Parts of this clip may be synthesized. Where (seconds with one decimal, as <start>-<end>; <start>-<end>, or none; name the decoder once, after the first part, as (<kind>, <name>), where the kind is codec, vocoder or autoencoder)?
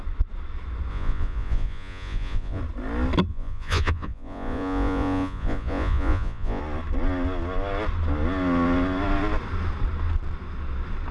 0.9-2.6 (vocoder, Vocos); 3.3-6.6